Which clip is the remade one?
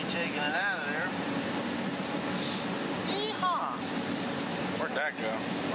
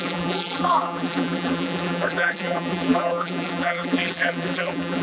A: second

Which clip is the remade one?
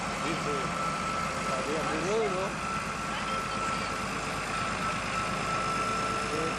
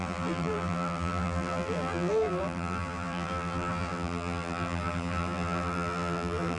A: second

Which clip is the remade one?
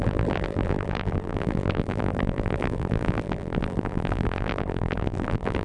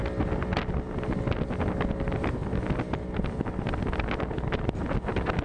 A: first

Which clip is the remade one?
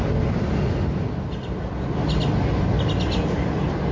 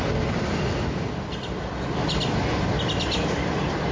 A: second